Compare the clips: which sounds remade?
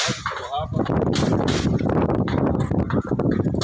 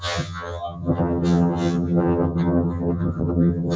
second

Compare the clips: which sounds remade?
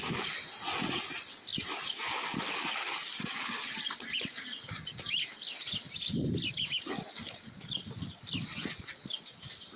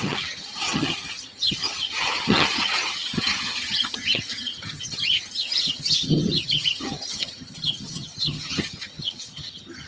second